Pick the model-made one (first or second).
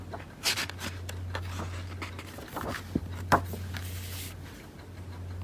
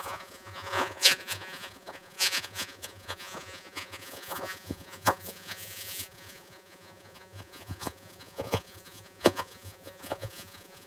second